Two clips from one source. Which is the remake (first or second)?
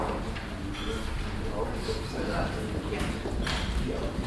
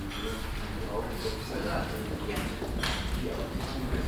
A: first